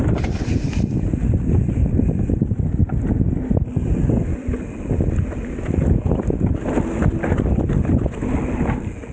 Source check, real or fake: real